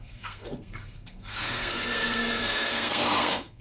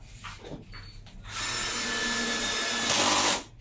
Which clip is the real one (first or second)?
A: second